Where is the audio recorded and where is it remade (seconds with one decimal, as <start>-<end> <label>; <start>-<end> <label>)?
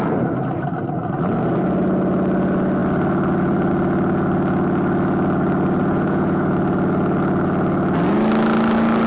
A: 0.0-5.8 recorded; 5.8-6.5 remade; 6.5-9.1 recorded